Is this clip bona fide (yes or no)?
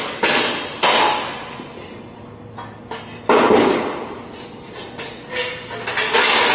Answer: yes